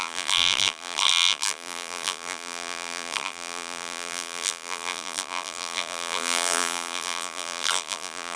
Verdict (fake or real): fake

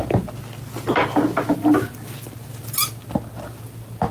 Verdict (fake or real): real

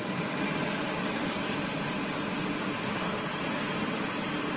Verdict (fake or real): real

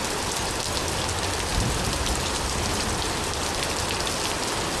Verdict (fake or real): real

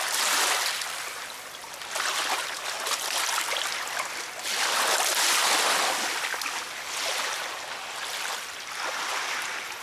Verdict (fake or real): real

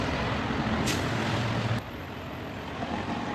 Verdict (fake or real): fake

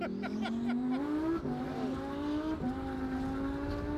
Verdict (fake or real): real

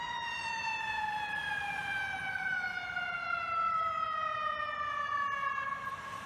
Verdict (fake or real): fake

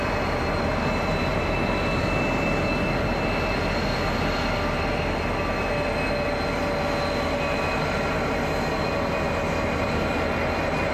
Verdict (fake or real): real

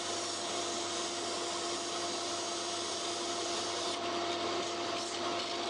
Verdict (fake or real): real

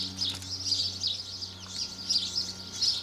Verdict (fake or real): real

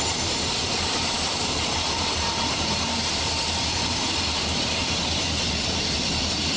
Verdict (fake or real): fake